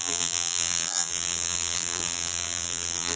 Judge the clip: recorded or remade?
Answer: remade